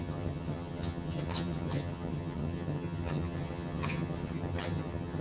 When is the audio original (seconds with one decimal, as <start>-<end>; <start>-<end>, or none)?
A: none

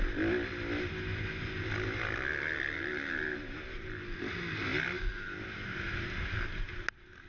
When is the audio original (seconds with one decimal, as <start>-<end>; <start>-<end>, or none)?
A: 0.0-7.3